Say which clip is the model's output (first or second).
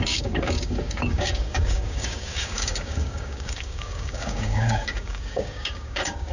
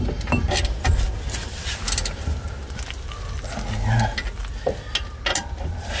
first